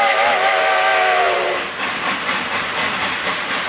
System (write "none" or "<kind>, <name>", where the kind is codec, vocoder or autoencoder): vocoder, BigVGAN v2